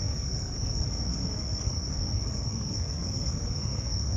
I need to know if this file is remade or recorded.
remade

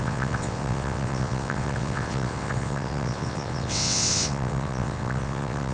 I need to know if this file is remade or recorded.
remade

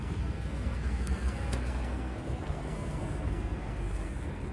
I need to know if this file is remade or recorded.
remade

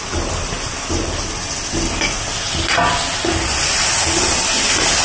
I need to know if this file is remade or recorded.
recorded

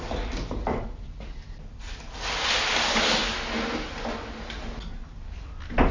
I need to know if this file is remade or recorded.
recorded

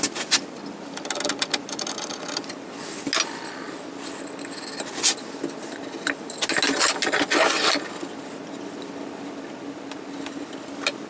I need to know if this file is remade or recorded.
recorded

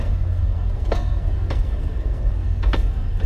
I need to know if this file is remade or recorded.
remade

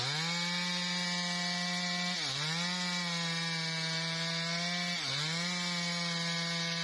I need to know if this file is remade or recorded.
recorded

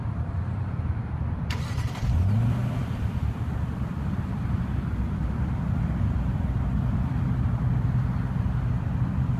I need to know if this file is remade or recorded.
remade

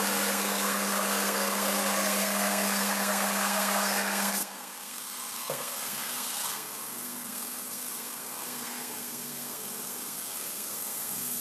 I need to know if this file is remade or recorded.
remade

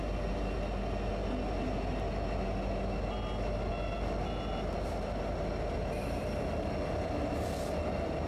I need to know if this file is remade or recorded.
recorded